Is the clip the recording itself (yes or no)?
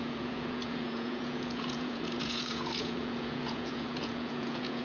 no